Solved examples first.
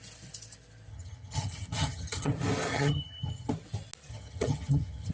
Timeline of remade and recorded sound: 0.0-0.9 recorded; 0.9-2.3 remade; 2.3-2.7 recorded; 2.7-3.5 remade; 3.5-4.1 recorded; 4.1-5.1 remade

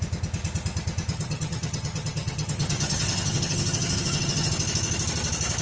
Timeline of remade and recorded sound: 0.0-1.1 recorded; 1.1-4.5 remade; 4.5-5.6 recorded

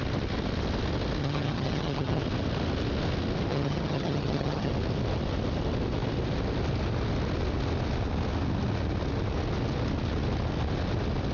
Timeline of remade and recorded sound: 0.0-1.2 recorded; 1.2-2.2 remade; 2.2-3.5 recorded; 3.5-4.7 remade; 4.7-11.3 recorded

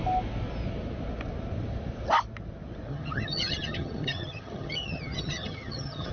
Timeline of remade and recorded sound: 0.0-2.9 recorded; 2.9-6.1 remade

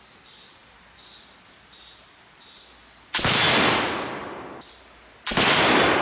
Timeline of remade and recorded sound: 0.0-6.0 recorded

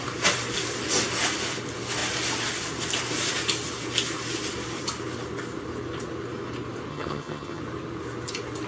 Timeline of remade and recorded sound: 0.0-6.9 recorded; 6.9-7.6 remade; 7.6-8.7 recorded

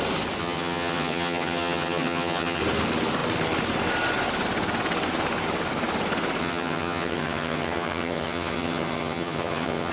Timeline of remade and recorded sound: 0.0-0.4 recorded; 0.4-2.6 remade; 2.6-6.4 recorded; 6.4-9.9 remade

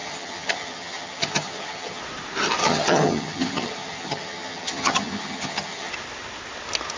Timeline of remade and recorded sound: 0.0-2.0 remade; 2.0-2.6 recorded; 2.6-5.9 remade; 5.9-7.0 recorded